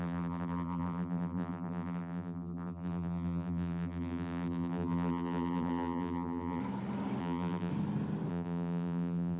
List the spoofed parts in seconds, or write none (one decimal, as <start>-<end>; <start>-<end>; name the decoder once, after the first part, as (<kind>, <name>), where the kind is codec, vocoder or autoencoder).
0.0-6.6 (vocoder, BigVGAN v2); 7.2-7.7; 8.3-9.4